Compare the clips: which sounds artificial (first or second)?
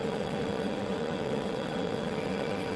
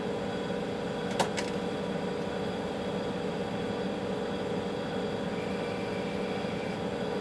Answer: first